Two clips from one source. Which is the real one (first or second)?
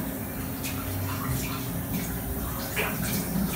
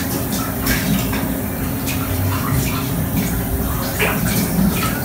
first